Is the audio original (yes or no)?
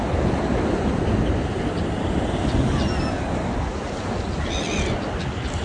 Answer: yes